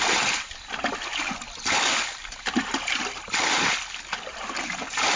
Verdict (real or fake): real